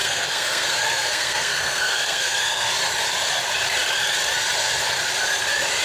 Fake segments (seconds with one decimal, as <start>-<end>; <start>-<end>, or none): 0.0-2.7